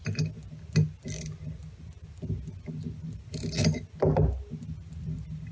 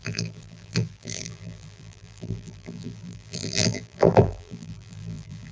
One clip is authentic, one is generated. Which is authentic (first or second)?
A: first